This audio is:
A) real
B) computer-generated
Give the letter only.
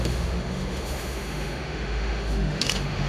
B